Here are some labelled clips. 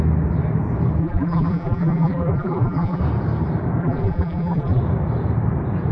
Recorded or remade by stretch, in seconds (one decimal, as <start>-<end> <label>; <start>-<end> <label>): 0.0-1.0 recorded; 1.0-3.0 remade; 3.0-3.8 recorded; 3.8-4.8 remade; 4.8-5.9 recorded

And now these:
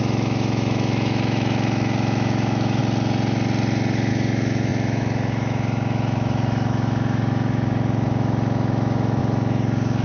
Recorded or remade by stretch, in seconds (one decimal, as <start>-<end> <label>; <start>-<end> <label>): 0.0-2.8 remade; 2.8-4.1 recorded; 4.1-10.0 remade

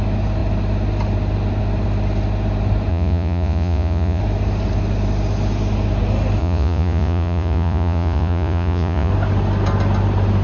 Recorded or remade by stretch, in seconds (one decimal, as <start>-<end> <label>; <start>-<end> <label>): 0.0-2.9 recorded; 2.9-4.2 remade; 4.2-6.4 recorded; 6.4-9.1 remade; 9.1-10.4 recorded